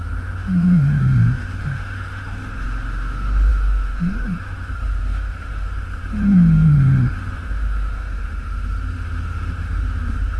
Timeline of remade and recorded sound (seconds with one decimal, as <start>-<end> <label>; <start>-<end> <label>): 0.0-10.4 remade